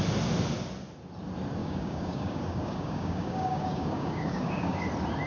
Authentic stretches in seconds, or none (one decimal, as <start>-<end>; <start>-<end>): 0.0-1.6; 4.8-5.3